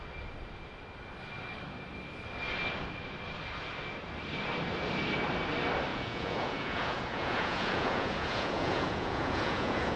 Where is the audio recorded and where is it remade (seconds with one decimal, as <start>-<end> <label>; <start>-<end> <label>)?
0.0-5.9 recorded; 5.9-10.0 remade